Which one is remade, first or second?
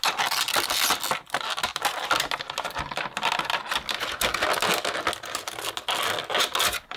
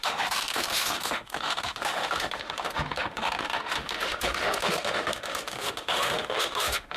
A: second